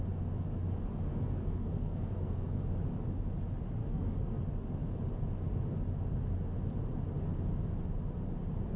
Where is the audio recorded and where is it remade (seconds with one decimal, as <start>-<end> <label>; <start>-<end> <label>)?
0.0-1.1 recorded; 1.1-2.6 remade; 2.6-3.8 recorded; 3.8-4.4 remade; 4.4-8.8 recorded